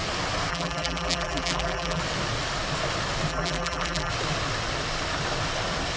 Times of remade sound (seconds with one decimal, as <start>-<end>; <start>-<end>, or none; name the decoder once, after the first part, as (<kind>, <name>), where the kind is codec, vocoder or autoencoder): 0.5-2.0 (vocoder, BigVGAN v2); 3.3-4.1

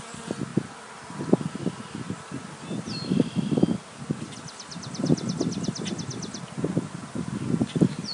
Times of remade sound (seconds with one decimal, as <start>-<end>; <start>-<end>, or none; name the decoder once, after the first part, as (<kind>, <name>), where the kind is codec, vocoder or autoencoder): none

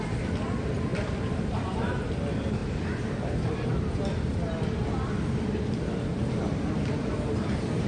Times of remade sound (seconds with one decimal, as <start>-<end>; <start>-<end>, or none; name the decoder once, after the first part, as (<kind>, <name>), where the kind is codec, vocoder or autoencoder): 0.9-2.1 (vocoder, BigVGAN v2); 2.6-3.7; 6.1-6.7

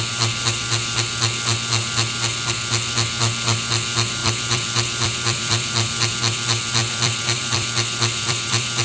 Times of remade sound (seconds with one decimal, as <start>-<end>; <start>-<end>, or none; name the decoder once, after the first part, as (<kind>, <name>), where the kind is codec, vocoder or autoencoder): 4.2-6.1 (vocoder, BigVGAN v2); 6.8-8.8

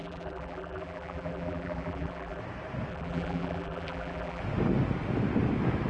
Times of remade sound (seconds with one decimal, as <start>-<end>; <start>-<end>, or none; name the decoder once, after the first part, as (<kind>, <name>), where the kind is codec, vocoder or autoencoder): 0.0-2.4 (vocoder, BigVGAN v2); 2.9-4.4

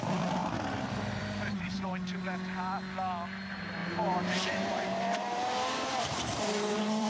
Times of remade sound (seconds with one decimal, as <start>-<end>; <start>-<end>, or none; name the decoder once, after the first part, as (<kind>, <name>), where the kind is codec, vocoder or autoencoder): 0.4-1.9 (vocoder, BigVGAN v2); 3.8-7.1